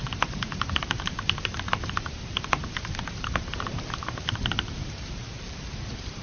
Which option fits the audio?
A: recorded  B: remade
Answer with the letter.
B